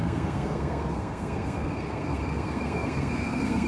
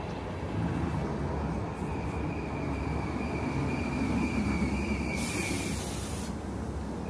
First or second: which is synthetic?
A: first